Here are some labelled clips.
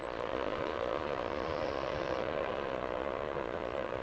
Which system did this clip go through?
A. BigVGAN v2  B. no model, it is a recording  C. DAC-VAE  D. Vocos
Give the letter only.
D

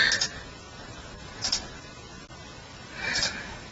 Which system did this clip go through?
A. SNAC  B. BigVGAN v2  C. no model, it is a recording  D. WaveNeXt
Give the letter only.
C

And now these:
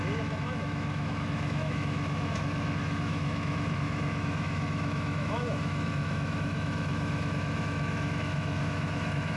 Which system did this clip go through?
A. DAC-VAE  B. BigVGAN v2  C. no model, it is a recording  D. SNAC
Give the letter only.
A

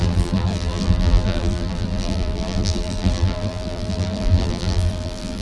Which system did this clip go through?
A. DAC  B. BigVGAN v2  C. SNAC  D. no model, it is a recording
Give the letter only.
B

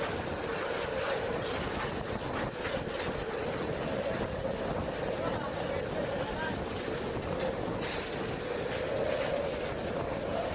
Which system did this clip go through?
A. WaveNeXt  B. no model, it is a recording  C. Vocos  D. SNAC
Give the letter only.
B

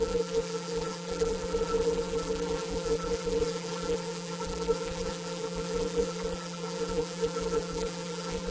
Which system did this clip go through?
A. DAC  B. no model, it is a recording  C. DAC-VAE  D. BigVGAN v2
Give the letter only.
D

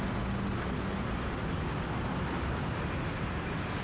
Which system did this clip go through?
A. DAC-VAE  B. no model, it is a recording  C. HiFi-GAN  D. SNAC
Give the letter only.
B